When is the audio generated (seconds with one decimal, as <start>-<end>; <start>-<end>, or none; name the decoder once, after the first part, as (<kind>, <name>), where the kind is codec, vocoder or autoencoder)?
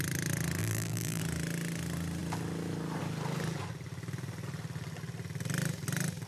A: 0.6-1.2 (vocoder, BigVGAN v2)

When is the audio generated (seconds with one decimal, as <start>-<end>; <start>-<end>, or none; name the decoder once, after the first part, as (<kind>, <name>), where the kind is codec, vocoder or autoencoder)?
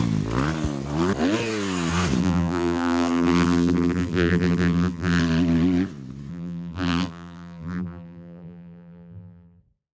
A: 2.2-5.2 (vocoder, BigVGAN v2); 6.3-9.6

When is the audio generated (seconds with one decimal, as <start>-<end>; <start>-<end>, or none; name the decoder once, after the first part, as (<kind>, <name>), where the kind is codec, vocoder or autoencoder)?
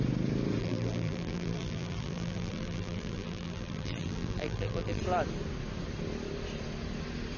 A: 0.6-5.0 (vocoder, BigVGAN v2)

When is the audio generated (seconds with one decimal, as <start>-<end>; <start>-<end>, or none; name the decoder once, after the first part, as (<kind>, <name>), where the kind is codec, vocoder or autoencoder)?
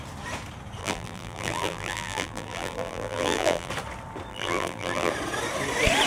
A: 0.8-3.7 (vocoder, BigVGAN v2); 4.3-5.1